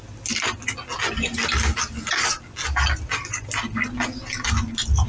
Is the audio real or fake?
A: real